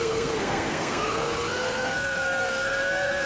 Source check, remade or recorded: remade